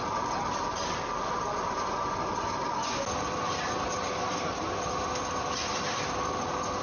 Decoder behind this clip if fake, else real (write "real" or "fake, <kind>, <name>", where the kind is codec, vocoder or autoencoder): real